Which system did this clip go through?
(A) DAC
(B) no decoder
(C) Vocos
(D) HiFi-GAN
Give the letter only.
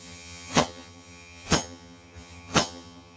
D